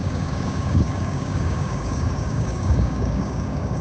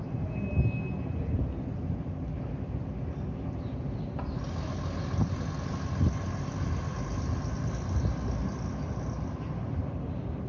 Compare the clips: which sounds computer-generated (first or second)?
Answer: first